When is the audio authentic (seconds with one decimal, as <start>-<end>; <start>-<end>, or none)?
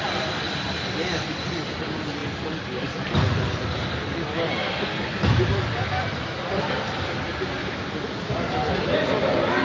0.0-9.6